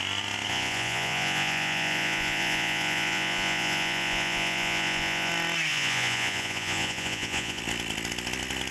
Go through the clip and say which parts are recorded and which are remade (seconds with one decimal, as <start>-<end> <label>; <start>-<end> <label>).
0.0-0.5 recorded; 0.5-5.3 remade; 5.3-5.7 recorded; 5.7-7.6 remade; 7.6-8.7 recorded